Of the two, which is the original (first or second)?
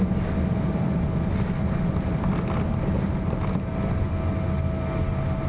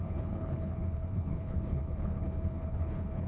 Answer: first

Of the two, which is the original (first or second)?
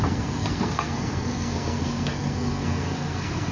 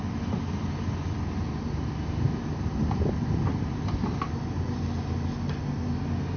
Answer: second